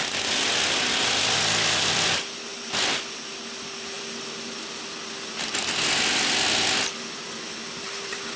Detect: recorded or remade recorded